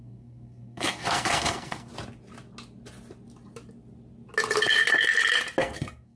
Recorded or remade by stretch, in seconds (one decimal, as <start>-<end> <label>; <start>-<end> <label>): 0.0-1.9 remade; 1.9-5.6 recorded; 5.6-6.2 remade